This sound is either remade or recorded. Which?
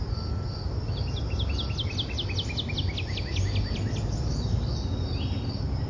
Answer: recorded